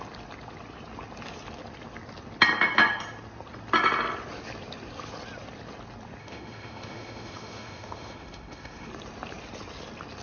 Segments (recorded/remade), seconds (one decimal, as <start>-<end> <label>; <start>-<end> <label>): 0.0-6.2 recorded; 6.2-8.9 remade; 8.9-10.2 recorded